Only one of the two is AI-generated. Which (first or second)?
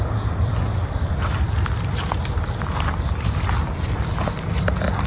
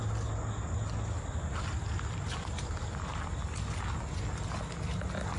first